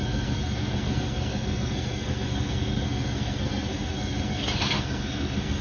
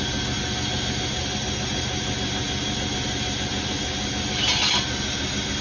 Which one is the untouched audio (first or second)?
second